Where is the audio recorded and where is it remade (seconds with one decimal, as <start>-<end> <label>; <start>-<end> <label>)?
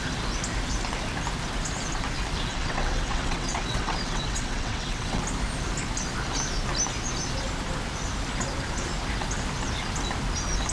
0.0-2.5 recorded; 2.5-5.2 remade; 5.2-10.7 recorded